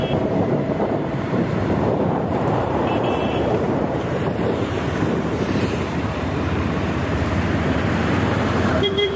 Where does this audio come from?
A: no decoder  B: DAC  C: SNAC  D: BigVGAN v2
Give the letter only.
D